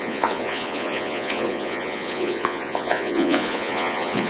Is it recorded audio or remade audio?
remade